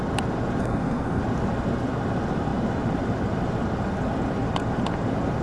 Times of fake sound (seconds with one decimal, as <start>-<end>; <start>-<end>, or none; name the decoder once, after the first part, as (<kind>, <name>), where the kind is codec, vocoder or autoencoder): 0.6-1.2 (codec, SNAC)